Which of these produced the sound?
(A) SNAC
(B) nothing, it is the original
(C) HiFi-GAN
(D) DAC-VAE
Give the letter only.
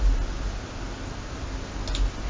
B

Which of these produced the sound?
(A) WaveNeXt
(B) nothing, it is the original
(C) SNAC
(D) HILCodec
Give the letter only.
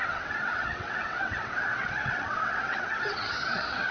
A